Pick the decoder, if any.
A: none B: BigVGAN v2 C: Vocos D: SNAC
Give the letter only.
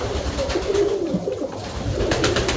A